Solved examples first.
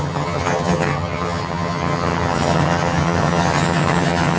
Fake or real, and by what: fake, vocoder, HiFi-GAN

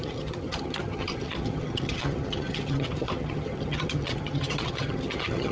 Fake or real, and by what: fake, vocoder, HiFi-GAN